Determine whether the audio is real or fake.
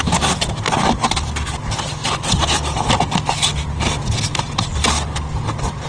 real